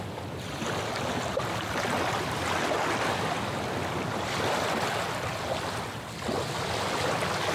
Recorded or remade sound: recorded